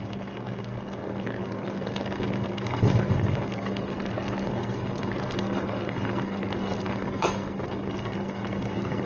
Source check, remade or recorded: remade